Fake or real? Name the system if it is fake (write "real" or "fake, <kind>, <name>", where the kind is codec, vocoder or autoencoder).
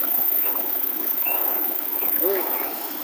fake, autoencoder, DAC-VAE